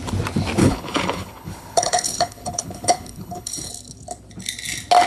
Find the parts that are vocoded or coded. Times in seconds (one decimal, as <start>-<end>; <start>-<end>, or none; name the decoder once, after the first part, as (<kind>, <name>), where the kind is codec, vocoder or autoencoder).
0.6-3.7 (codec, HILCodec)